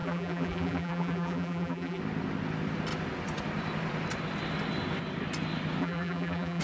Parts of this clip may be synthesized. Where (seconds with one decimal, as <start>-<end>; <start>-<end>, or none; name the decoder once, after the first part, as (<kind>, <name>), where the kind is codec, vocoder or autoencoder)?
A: 0.0-2.0 (vocoder, BigVGAN v2); 5.8-6.6